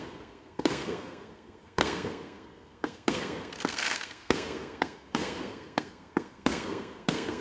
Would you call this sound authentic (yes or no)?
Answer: no